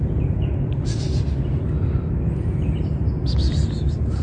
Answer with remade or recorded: recorded